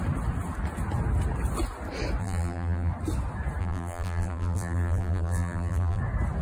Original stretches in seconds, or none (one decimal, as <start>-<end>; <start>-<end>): 0.0-2.2; 2.9-3.6; 6.0-6.4